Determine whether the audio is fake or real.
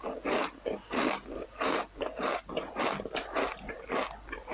real